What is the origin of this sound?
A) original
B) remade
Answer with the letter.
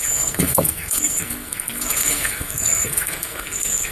B